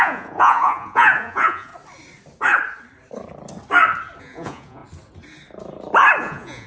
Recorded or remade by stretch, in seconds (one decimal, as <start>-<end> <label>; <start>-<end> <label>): 0.0-1.7 remade; 1.7-4.2 recorded; 4.2-4.8 remade; 4.8-6.2 recorded; 6.2-6.7 remade

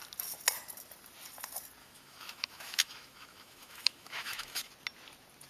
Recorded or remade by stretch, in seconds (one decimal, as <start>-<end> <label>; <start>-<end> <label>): 0.0-1.8 recorded; 1.8-4.7 remade; 4.7-5.5 recorded

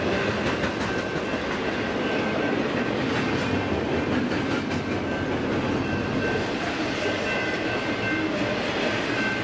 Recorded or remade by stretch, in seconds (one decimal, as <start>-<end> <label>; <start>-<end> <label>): 0.0-9.4 recorded

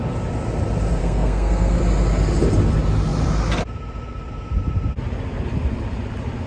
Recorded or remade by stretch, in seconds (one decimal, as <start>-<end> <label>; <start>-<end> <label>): 0.0-1.0 recorded; 1.0-1.8 remade; 1.8-6.5 recorded

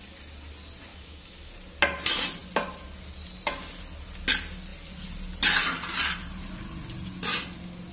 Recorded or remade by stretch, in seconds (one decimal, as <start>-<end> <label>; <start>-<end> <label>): 0.0-0.9 recorded; 0.9-1.5 remade; 1.5-7.9 recorded